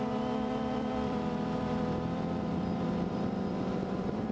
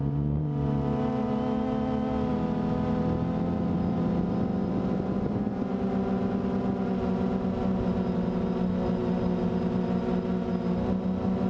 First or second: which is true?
second